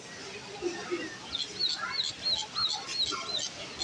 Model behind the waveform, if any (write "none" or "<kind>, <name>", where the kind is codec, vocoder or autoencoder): none